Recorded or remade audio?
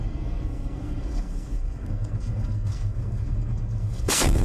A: remade